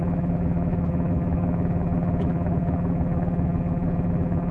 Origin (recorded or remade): remade